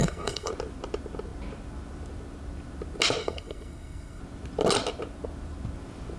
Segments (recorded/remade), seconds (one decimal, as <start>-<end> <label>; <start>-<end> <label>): 0.0-0.5 remade; 0.5-3.2 recorded; 3.2-4.2 remade; 4.2-6.2 recorded